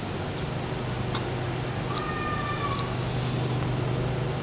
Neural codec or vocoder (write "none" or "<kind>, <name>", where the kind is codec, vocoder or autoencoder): none